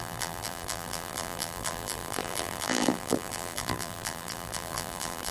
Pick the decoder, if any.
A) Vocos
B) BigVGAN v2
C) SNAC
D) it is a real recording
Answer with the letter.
B